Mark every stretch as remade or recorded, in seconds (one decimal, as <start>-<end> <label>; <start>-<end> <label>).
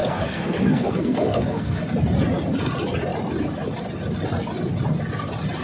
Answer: 0.0-1.8 remade; 1.8-5.6 recorded